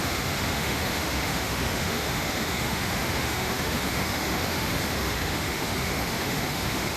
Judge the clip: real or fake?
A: fake